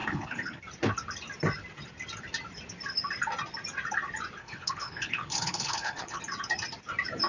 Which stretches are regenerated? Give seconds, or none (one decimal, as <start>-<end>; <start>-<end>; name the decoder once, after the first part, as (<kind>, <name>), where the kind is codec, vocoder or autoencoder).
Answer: 0.0-0.6 (codec, HILCodec); 4.4-6.2